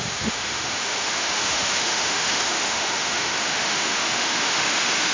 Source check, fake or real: fake